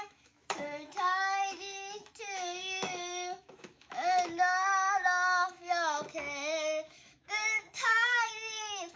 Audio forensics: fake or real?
fake